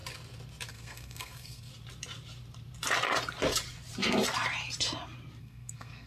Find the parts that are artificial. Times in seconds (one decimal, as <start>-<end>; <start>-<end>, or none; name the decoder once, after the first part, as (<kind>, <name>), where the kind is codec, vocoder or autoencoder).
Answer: 0.7-1.7 (codec, SNAC); 5.4-6.1